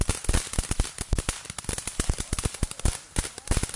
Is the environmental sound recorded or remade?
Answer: remade